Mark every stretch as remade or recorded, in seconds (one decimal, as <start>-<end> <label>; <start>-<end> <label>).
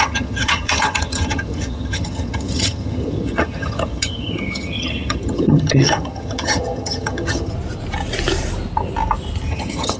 0.0-7.5 remade; 7.5-9.5 recorded; 9.5-10.0 remade